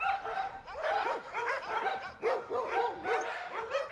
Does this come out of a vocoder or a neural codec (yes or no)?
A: no